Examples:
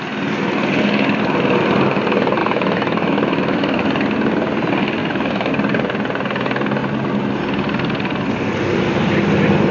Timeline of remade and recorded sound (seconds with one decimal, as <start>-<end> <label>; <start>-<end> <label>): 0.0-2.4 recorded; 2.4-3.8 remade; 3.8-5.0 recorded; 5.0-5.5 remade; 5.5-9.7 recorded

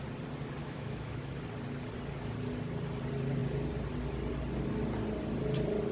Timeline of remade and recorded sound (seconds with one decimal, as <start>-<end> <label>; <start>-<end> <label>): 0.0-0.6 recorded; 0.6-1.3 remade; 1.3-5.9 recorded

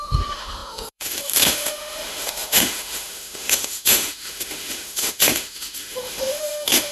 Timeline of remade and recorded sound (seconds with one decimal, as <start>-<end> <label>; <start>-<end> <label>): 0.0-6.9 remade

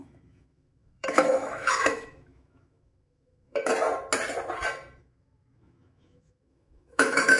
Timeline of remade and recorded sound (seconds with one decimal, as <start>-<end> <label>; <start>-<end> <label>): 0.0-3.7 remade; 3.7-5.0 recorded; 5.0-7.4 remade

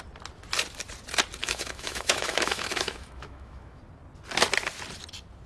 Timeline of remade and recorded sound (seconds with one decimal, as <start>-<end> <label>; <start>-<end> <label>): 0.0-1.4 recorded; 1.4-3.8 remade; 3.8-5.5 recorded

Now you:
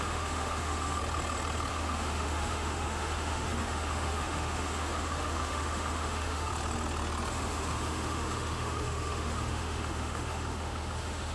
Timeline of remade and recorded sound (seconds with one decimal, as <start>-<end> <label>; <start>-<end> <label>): 0.0-1.0 remade; 1.0-1.7 recorded; 1.7-6.5 remade; 6.5-7.3 recorded; 7.3-11.3 remade

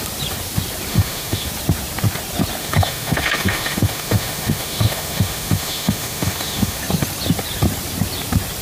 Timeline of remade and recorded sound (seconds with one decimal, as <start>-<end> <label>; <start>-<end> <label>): 0.0-0.9 recorded; 0.9-1.5 remade; 1.5-2.6 recorded; 2.6-6.8 remade; 6.8-8.6 recorded